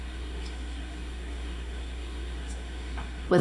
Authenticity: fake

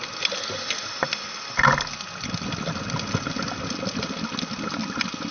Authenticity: real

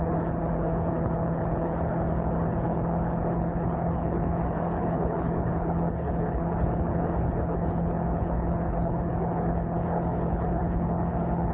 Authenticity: fake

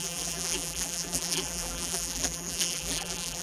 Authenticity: fake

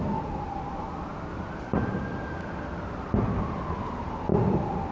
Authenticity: real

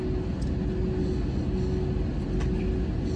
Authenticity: real